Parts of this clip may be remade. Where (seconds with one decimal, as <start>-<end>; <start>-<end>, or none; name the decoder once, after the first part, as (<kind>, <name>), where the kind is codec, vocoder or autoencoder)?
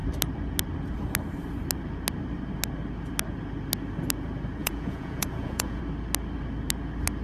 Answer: 4.6-5.8 (vocoder, Vocos)